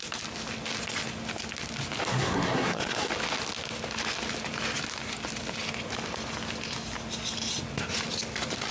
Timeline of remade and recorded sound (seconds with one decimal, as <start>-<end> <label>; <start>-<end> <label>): 0.0-2.1 recorded; 2.1-3.1 remade; 3.1-8.7 recorded